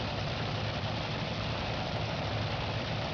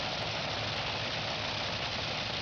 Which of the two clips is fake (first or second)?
first